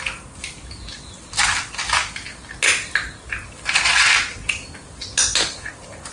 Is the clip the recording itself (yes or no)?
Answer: yes